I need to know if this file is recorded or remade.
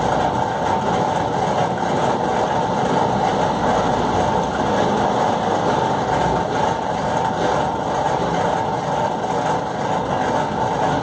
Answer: recorded